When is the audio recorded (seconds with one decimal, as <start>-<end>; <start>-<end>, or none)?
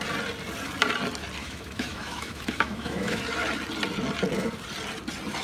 0.0-1.4; 3.2-5.4